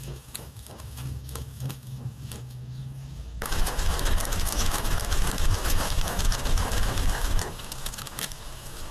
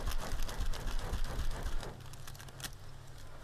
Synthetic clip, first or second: first